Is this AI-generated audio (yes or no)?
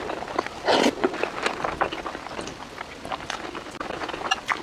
no